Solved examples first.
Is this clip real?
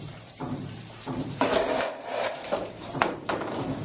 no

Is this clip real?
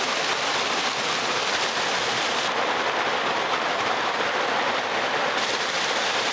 yes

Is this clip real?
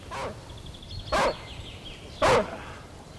yes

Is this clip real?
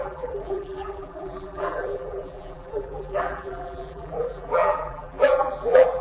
no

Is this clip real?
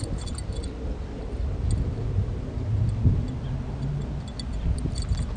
yes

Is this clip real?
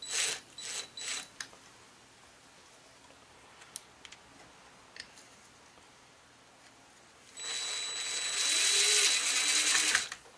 yes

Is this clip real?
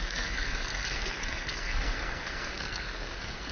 no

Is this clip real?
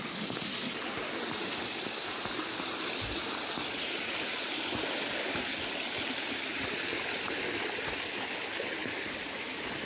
yes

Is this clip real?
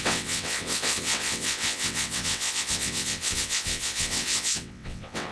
no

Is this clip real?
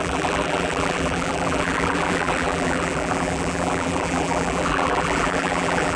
no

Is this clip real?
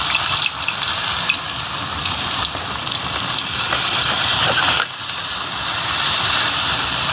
yes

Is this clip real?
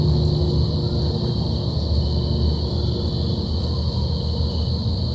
yes